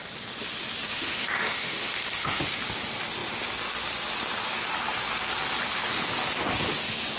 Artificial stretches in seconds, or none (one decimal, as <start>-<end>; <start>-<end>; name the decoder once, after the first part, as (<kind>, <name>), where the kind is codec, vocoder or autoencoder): 0.9-2.4 (autoencoder, DAC-VAE)